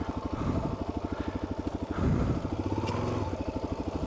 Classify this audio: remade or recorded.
recorded